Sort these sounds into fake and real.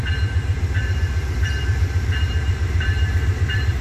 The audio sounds fake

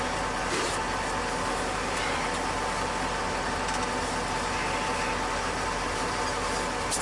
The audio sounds real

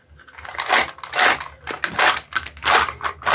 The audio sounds real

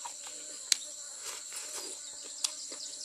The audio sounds real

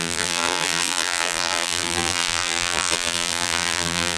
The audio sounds fake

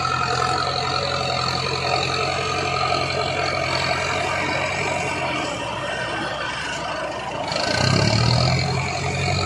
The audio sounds real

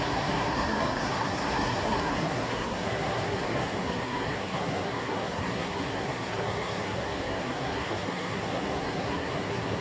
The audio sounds fake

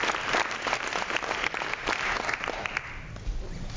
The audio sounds real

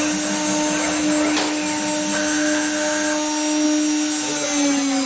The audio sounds real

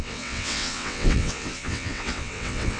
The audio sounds fake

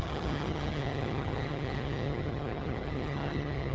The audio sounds fake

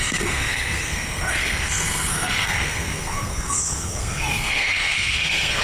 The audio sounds fake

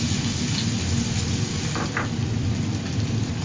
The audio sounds real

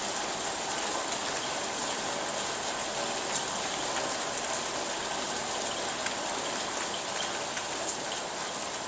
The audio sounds real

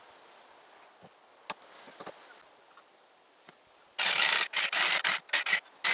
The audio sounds real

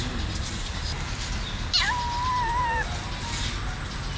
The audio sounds real